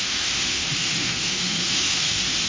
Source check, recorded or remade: remade